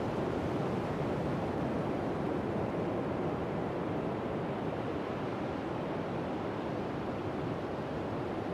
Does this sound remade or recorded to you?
recorded